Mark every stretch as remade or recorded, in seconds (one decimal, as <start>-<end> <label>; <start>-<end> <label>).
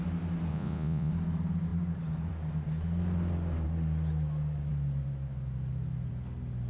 0.0-0.5 recorded; 0.5-1.1 remade; 1.1-6.7 recorded